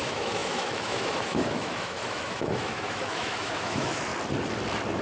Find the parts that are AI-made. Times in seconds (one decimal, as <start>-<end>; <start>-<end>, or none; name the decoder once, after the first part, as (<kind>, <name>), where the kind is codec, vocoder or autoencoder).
0.0-4.1 (autoencoder, DAC-VAE)